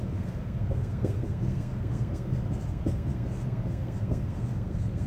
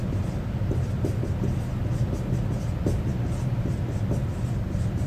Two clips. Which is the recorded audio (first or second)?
second